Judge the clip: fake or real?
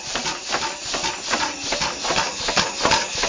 real